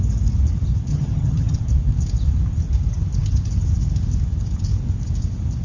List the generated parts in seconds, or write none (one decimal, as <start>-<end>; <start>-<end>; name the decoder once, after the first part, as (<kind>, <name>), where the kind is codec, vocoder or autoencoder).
0.9-1.6 (vocoder, HiFi-GAN)